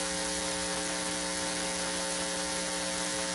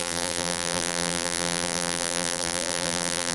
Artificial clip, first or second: second